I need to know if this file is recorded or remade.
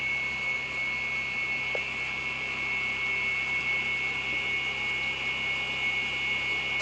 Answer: recorded